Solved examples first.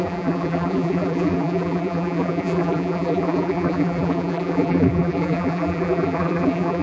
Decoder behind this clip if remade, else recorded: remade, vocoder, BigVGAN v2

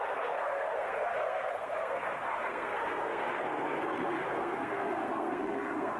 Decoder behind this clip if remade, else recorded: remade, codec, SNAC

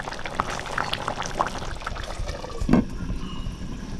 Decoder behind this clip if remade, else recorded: recorded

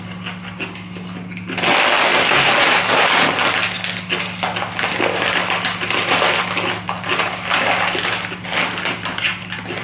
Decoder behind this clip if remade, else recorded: recorded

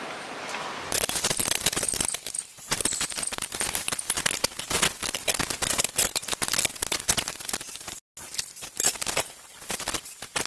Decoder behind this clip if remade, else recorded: recorded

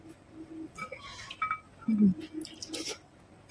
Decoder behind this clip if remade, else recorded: recorded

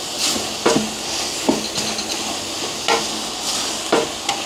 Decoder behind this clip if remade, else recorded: recorded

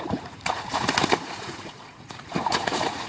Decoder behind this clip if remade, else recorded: remade, vocoder, Vocos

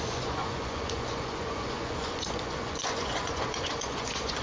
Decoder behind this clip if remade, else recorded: remade, vocoder, Vocos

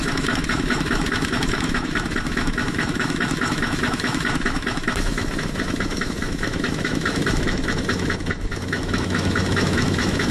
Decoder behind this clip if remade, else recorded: remade, autoencoder, DAC-VAE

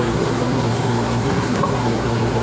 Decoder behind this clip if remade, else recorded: remade, codec, SNAC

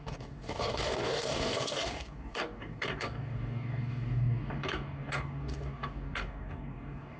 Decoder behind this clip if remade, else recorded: remade, codec, DAC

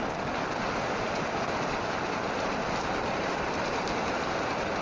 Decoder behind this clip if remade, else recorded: recorded